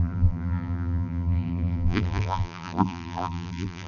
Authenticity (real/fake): fake